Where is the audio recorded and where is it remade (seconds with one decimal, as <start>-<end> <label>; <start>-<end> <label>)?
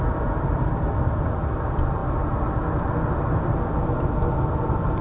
0.0-5.0 recorded